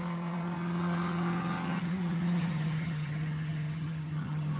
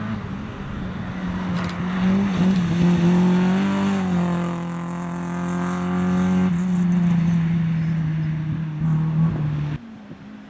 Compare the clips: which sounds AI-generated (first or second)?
first